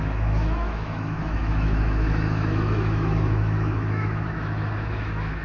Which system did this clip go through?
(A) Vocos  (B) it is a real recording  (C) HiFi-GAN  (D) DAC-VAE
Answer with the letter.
D